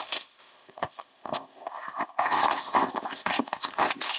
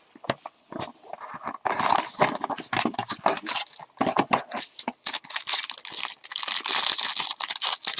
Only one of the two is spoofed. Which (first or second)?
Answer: first